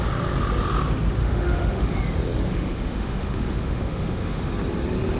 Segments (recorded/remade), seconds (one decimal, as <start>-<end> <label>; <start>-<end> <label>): 0.0-1.2 recorded; 1.2-2.0 remade; 2.0-2.5 recorded; 2.5-4.5 remade; 4.5-5.2 recorded